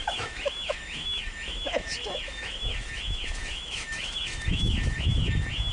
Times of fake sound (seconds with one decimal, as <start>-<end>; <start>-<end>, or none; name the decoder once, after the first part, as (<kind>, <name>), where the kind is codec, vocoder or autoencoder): 0.0-5.7 (autoencoder, DAC-VAE)